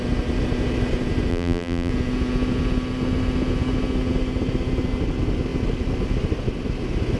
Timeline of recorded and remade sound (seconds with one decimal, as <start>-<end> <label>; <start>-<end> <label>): 0.0-1.3 recorded; 1.3-1.9 remade; 1.9-7.2 recorded